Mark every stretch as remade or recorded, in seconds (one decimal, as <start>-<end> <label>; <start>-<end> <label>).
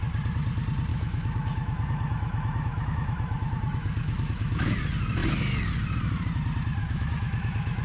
0.0-0.9 recorded; 0.9-4.8 remade; 4.8-6.8 recorded; 6.8-7.8 remade